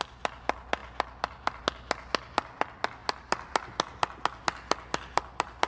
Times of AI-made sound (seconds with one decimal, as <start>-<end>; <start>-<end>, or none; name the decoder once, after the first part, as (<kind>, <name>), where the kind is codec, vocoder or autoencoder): none